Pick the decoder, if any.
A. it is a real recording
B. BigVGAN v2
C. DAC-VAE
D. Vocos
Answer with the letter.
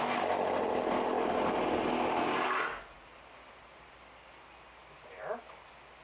A